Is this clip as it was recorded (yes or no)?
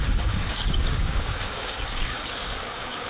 no